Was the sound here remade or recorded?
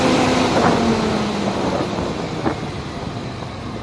recorded